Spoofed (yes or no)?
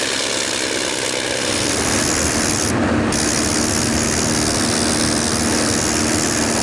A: no